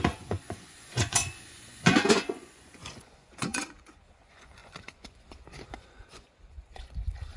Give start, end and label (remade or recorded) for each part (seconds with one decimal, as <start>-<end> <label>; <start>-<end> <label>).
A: 0.0-7.4 remade

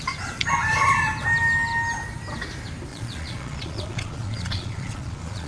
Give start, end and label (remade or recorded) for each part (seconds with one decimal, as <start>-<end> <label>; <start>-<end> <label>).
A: 0.0-2.9 recorded; 2.9-5.5 remade

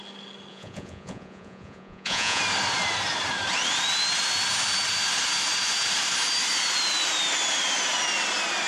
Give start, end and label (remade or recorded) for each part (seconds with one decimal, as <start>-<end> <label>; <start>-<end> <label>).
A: 0.0-0.5 recorded; 0.5-2.4 remade; 2.4-8.7 recorded

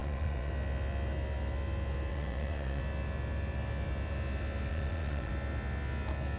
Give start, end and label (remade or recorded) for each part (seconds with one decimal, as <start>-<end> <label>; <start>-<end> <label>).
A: 0.0-0.5 remade; 0.5-2.1 recorded; 2.1-2.8 remade; 2.8-4.7 recorded; 4.7-5.3 remade; 5.3-6.4 recorded

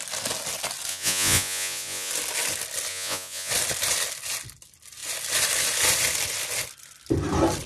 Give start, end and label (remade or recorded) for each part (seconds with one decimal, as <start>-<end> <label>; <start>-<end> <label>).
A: 0.0-0.9 recorded; 0.9-2.1 remade; 2.1-2.9 recorded; 2.9-3.5 remade; 3.5-7.7 recorded

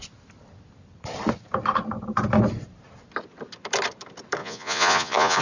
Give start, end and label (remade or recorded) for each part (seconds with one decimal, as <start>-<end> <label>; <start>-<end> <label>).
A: 0.0-4.4 recorded; 4.4-5.4 remade

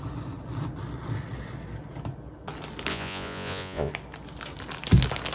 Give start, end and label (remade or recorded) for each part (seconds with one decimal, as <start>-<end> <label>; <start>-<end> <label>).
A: 0.0-2.9 recorded; 2.9-3.9 remade; 3.9-5.3 recorded

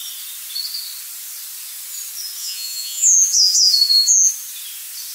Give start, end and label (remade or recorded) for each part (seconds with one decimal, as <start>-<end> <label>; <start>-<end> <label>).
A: 0.0-2.4 recorded; 2.4-4.3 remade; 4.3-5.1 recorded